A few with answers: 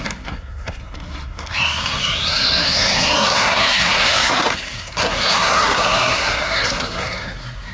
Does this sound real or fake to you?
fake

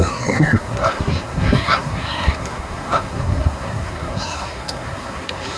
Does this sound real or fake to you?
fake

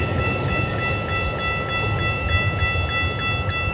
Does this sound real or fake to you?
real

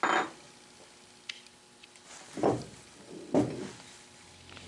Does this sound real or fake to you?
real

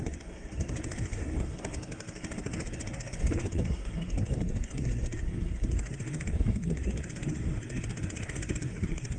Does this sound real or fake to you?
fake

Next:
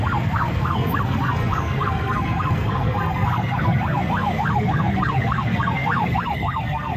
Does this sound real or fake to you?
fake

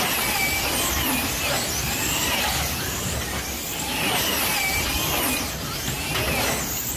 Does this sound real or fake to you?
real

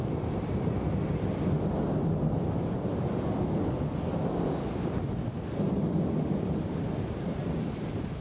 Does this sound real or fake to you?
real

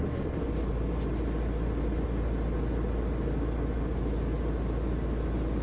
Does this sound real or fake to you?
real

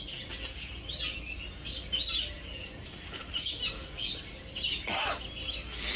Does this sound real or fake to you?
real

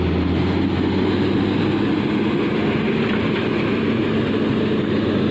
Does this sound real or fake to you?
real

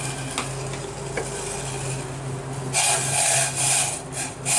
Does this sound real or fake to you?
real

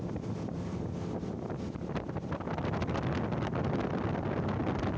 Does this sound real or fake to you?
real